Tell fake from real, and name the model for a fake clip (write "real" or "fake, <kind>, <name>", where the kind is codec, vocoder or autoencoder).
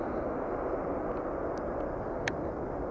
real